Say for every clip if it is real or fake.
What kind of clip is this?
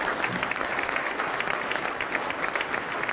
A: real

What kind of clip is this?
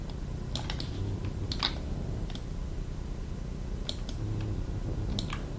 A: real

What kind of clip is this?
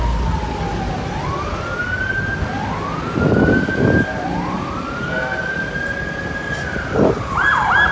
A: real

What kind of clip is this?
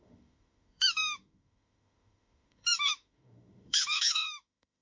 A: fake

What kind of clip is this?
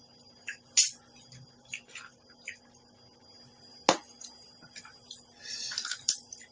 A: fake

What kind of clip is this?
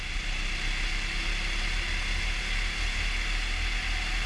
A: real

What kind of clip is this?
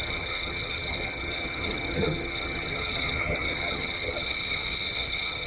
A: fake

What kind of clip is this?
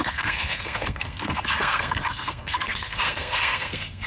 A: fake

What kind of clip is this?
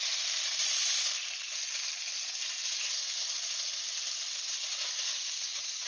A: real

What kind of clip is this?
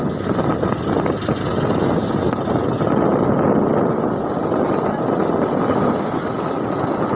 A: real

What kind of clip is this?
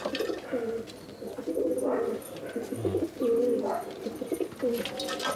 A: real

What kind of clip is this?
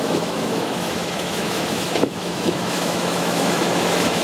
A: fake